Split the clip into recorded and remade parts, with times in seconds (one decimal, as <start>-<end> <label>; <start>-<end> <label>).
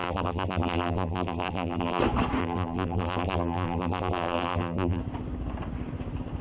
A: 0.0-2.0 remade; 2.0-2.4 recorded; 2.4-5.0 remade; 5.0-6.4 recorded